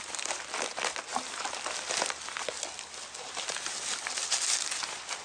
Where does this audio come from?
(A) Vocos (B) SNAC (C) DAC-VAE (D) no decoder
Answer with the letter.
D